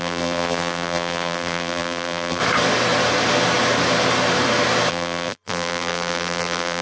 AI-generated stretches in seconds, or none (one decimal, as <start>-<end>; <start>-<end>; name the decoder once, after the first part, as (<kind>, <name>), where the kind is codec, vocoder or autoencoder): 0.0-2.4 (vocoder, BigVGAN v2); 4.9-6.8